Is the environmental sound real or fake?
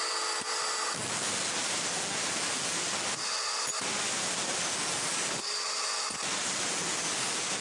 real